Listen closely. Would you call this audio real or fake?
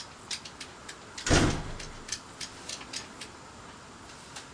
real